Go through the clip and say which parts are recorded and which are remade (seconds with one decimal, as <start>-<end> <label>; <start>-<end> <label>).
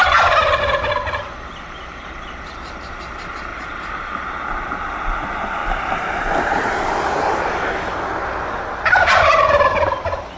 0.0-3.5 recorded; 3.5-4.8 remade; 4.8-5.6 recorded; 5.6-7.9 remade; 7.9-10.4 recorded